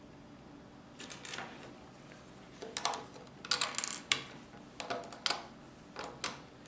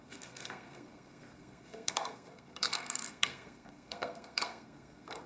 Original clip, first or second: first